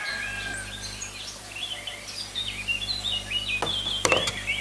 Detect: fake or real real